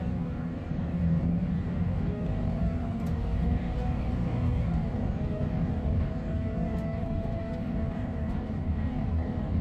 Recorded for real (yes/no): no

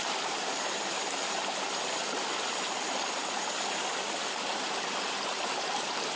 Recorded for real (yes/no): yes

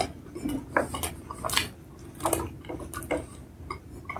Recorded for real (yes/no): yes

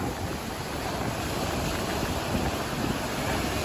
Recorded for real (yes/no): yes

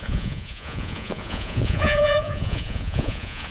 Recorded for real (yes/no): no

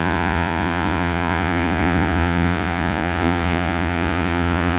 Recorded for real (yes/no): no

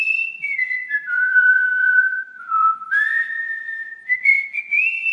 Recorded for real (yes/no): no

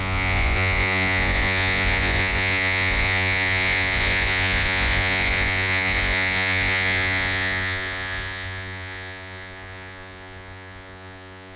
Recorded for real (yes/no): no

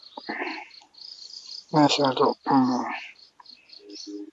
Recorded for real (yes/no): yes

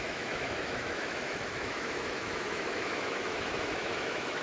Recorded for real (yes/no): no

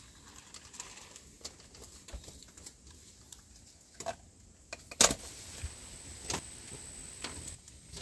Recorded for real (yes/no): yes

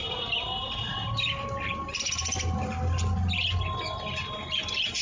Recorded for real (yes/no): yes